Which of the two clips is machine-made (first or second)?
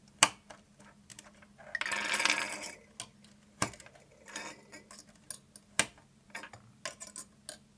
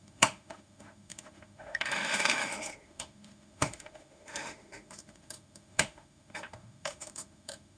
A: second